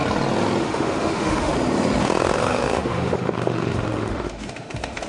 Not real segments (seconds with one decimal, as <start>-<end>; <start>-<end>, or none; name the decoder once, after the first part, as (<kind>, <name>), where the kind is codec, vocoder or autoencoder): 0.6-1.5 (autoencoder, DAC-VAE); 2.0-5.1